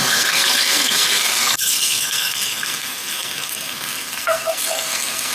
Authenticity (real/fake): fake